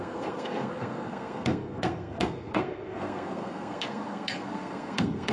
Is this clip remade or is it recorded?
remade